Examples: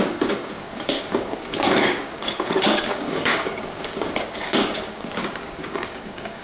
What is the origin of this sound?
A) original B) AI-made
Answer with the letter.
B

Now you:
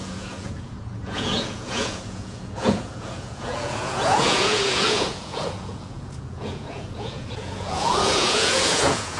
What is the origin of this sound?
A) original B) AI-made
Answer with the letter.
B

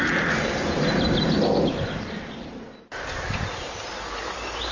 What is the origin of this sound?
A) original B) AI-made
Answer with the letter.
A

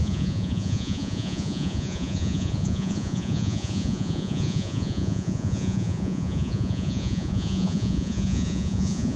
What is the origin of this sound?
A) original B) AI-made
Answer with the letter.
B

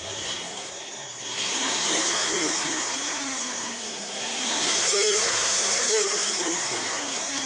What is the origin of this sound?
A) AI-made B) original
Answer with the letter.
A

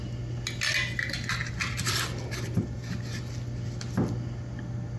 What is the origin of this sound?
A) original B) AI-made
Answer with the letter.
A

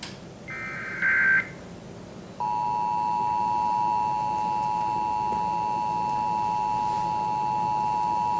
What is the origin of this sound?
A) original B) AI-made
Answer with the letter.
A